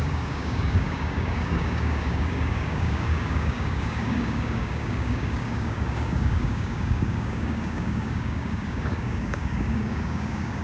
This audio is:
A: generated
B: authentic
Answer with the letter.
A